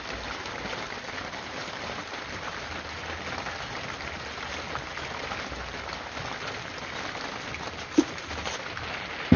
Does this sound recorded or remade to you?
recorded